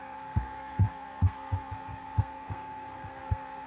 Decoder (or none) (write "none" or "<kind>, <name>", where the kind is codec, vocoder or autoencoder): codec, SNAC